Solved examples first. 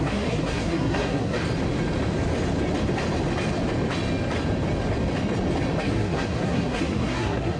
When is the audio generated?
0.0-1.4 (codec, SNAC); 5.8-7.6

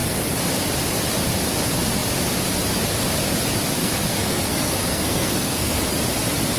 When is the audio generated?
3.8-5.8 (codec, SNAC)

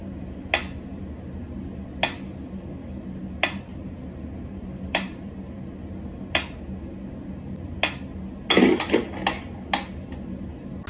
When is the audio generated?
3.7-5.3 (vocoder, BigVGAN v2)

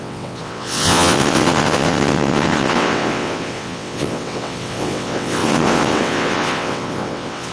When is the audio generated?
0.0-7.5 (vocoder, WaveNeXt)

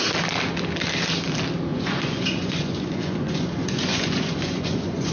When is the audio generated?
1.7-5.1 (vocoder, Vocos)

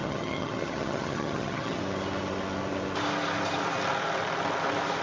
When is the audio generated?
0.0-1.8 (vocoder, HiFi-GAN)

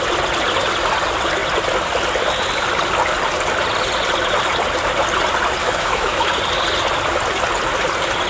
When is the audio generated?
5.6-6.3 (autoencoder, DAC-VAE)